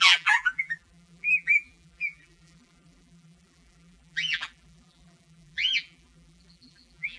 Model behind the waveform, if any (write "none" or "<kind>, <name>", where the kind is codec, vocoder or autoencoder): vocoder, BigVGAN v2